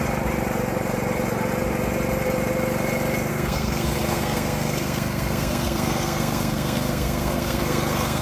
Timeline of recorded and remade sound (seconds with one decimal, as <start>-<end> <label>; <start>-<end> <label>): 0.0-3.3 recorded; 3.3-8.2 remade